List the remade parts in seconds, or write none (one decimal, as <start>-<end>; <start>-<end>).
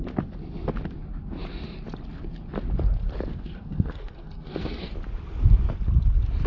3.3-4.9